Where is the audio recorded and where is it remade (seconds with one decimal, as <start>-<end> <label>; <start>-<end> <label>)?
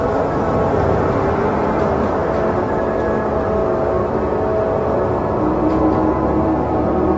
0.0-7.2 recorded